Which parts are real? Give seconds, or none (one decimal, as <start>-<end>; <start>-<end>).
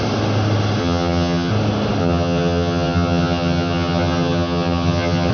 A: 0.0-0.8; 1.5-2.0